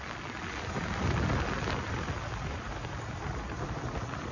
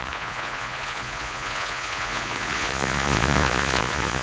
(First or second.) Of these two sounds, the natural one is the first